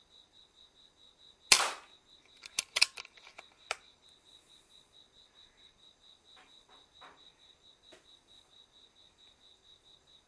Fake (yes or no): no